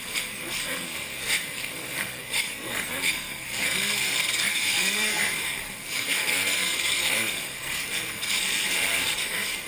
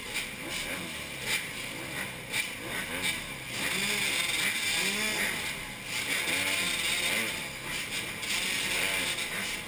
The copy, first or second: first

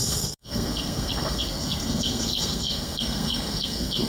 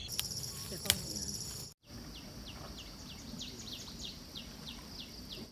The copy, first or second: first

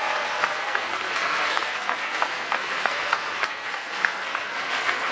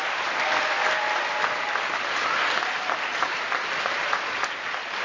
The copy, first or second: first